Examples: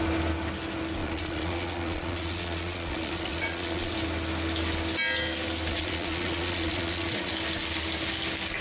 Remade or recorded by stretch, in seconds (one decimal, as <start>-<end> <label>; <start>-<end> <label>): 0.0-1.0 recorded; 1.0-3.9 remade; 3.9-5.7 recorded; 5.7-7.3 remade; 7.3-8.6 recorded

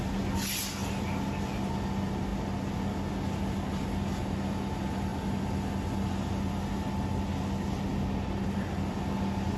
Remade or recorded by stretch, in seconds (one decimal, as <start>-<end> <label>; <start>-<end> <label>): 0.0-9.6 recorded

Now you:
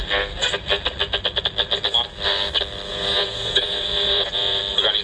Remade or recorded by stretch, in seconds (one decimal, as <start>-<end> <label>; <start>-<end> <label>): 0.0-2.9 recorded; 2.9-4.6 remade; 4.6-5.0 recorded

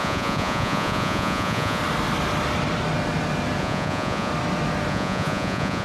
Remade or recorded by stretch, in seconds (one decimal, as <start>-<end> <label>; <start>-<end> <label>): 0.0-1.8 remade; 1.8-3.6 recorded; 3.6-4.3 remade; 4.3-4.9 recorded; 4.9-5.8 remade

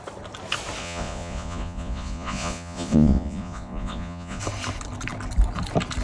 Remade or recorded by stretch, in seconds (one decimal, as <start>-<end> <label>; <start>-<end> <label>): 0.0-0.8 recorded; 0.8-4.4 remade; 4.4-6.0 recorded